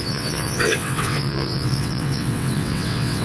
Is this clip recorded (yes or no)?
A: no